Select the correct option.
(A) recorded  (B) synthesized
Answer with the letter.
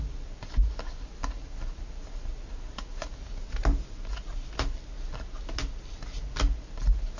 A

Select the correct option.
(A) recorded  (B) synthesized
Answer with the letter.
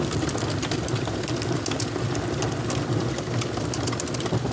A